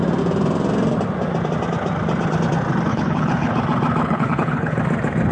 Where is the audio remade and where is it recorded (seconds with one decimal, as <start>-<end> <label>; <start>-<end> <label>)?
0.0-2.9 recorded; 2.9-3.6 remade; 3.6-4.0 recorded; 4.0-4.8 remade; 4.8-5.3 recorded